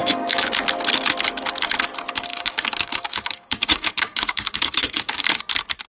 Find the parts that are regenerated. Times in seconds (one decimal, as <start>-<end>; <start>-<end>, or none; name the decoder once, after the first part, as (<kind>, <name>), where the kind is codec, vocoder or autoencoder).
0.0-0.5 (codec, DAC); 2.3-5.4